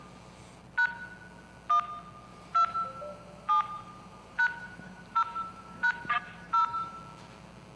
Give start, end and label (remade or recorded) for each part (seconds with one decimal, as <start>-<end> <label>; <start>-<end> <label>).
0.0-2.3 recorded; 2.3-7.0 remade; 7.0-7.8 recorded